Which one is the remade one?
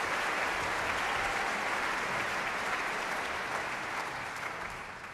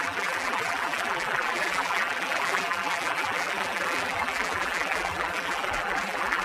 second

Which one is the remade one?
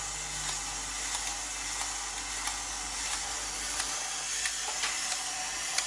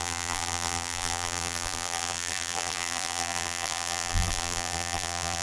second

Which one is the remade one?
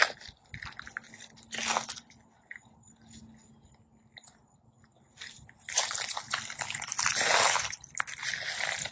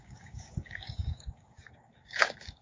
second